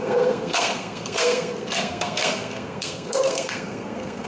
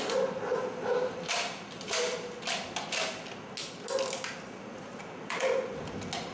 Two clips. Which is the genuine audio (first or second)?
second